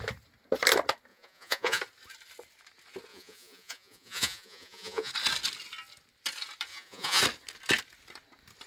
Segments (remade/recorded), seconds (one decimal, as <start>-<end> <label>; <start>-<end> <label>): 0.0-1.1 recorded; 1.1-1.8 remade; 1.8-3.1 recorded; 3.1-5.1 remade; 5.1-6.7 recorded; 6.7-7.2 remade; 7.2-8.7 recorded